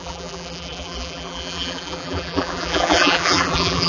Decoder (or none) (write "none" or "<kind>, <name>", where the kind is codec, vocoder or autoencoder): vocoder, BigVGAN v2